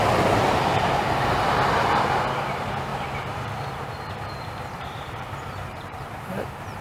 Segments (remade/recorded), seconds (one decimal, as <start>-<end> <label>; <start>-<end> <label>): 0.0-1.5 remade; 1.5-2.9 recorded; 2.9-6.2 remade; 6.2-6.8 recorded